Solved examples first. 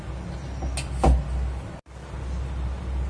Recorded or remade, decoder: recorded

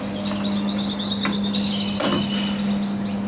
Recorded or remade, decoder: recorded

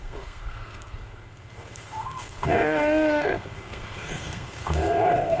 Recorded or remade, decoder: remade, codec, SNAC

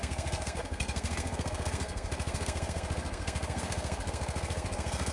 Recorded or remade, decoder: remade, codec, SNAC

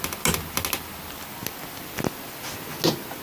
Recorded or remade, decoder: recorded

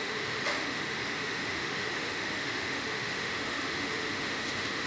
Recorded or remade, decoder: remade, autoencoder, DAC-VAE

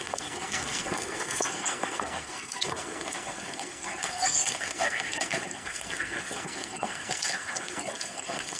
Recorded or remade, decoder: remade, codec, SNAC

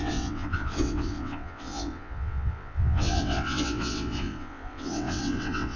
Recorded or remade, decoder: remade, vocoder, WaveNeXt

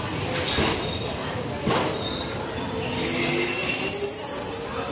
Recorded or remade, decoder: recorded